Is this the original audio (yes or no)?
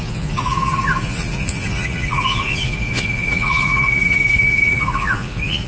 no